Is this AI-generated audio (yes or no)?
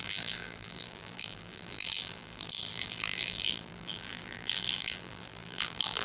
yes